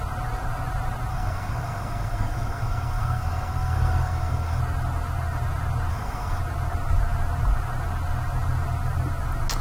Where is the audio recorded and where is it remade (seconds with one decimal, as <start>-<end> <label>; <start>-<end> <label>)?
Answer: 0.0-1.1 recorded; 1.1-4.6 remade; 4.6-5.9 recorded; 5.9-6.4 remade; 6.4-9.6 recorded